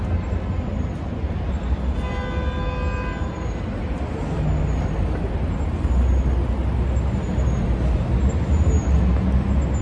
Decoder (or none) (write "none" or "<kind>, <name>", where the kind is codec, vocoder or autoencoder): none